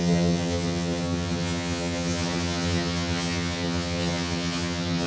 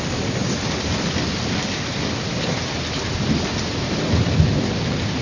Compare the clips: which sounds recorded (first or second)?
second